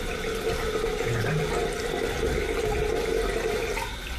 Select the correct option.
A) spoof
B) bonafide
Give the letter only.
B